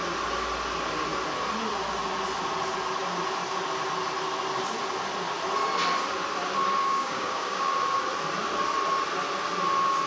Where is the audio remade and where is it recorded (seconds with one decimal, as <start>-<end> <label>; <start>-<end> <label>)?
0.0-6.8 recorded; 6.8-7.7 remade; 7.7-10.1 recorded